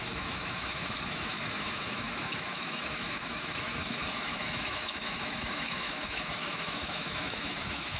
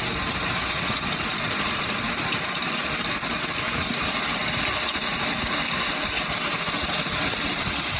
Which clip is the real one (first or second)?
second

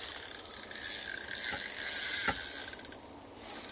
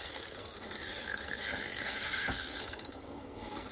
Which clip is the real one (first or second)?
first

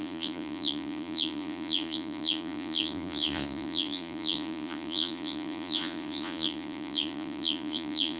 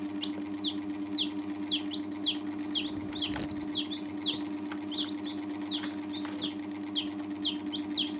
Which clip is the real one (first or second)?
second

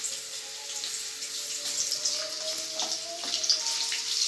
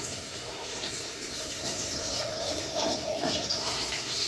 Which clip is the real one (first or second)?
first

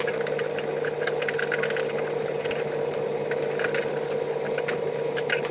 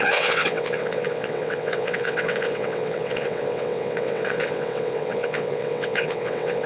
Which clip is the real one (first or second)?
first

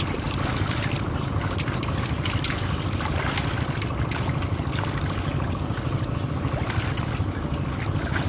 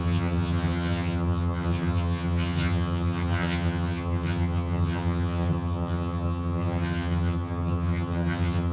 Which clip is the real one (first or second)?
first